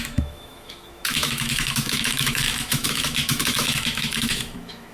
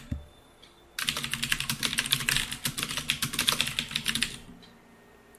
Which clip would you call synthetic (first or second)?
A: first